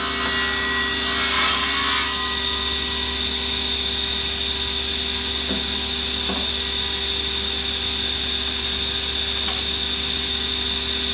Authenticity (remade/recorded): recorded